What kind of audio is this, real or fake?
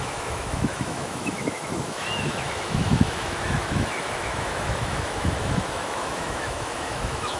fake